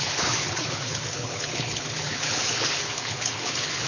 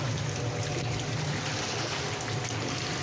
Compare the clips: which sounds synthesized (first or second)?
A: first